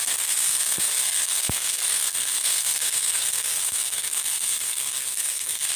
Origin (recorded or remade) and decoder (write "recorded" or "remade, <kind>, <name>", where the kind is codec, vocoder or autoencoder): remade, codec, SNAC